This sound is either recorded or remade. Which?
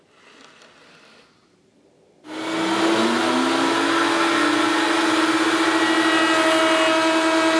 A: recorded